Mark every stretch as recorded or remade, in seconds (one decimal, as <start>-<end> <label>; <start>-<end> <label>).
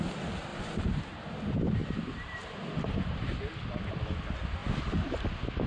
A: 0.0-0.5 recorded; 0.5-1.0 remade; 1.0-1.8 recorded; 1.8-3.3 remade; 3.3-5.7 recorded